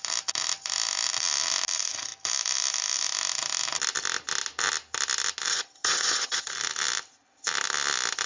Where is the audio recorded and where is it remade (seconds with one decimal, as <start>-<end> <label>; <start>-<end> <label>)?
0.0-5.5 recorded; 5.5-6.5 remade; 6.5-8.3 recorded